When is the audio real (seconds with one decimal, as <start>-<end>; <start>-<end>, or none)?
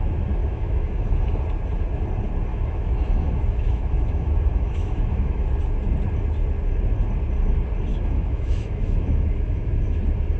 0.0-0.4; 1.4-2.5; 5.5-7.9; 10.0-10.4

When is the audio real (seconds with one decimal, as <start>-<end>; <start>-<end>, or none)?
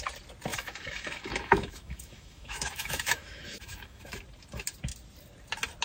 0.0-0.5; 4.0-5.8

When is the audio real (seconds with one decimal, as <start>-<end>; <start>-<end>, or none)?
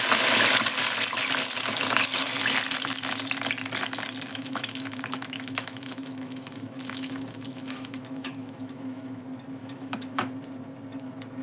0.0-4.3; 9.2-9.6; 10.3-11.4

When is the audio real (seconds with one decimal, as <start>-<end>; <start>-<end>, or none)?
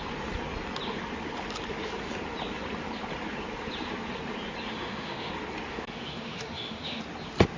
0.0-4.7; 5.3-5.7; 7.0-7.6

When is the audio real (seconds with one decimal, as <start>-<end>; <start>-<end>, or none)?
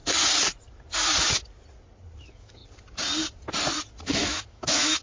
0.0-2.2; 2.6-4.0